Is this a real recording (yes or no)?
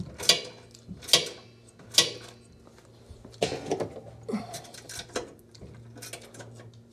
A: yes